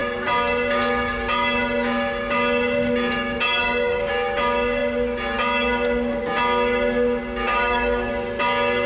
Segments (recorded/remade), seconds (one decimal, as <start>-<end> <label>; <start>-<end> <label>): 0.0-3.6 recorded; 3.6-4.1 remade; 4.1-7.5 recorded; 7.5-8.1 remade; 8.1-8.9 recorded